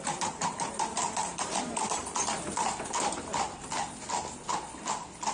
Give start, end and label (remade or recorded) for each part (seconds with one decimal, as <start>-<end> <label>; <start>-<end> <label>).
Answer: 0.0-2.0 remade; 2.0-5.3 recorded

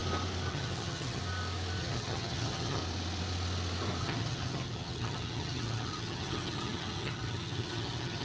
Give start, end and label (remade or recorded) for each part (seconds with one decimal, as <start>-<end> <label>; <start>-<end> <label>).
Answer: 0.0-0.5 recorded; 0.5-1.2 remade; 1.2-1.8 recorded; 1.8-2.8 remade; 2.8-4.0 recorded; 4.0-8.2 remade

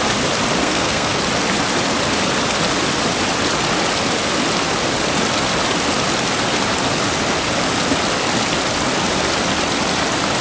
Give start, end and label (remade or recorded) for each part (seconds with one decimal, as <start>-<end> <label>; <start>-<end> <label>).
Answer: 0.0-0.6 recorded; 0.6-1.2 remade; 1.2-10.4 recorded